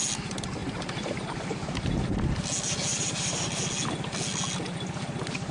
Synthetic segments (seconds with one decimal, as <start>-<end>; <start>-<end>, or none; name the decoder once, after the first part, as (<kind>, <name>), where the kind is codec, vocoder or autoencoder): 2.9-3.5 (vocoder, BigVGAN v2)